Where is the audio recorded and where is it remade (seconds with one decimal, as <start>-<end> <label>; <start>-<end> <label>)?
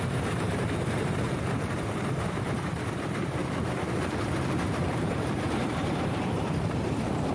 0.0-3.4 remade; 3.4-4.0 recorded; 4.0-7.3 remade